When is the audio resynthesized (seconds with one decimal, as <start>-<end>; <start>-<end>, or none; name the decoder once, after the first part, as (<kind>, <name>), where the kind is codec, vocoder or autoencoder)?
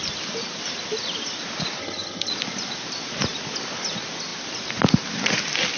1.8-2.3 (vocoder, HiFi-GAN)